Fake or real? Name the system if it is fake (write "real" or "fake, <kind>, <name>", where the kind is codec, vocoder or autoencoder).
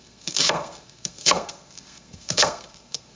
fake, codec, SNAC